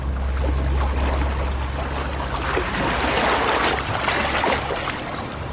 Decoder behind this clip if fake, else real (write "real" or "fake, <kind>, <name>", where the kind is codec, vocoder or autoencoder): real